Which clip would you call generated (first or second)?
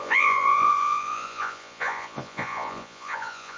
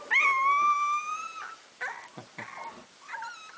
first